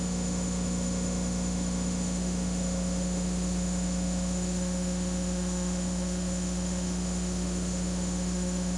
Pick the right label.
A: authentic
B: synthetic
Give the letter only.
B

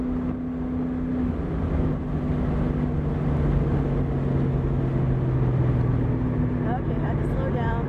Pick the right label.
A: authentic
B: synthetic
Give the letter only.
A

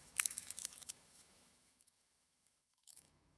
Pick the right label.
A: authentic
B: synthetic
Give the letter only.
B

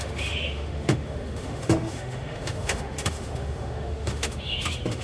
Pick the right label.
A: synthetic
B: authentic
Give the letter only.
A